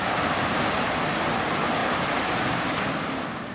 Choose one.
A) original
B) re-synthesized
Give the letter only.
A